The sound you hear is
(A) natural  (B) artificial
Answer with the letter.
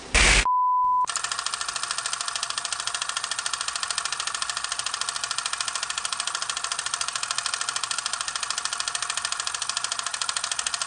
A